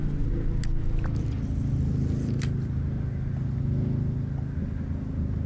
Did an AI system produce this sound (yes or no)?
no